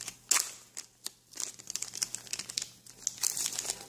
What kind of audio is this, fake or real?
real